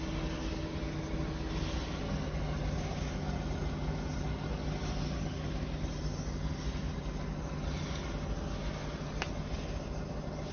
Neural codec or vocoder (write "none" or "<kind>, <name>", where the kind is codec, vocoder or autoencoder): none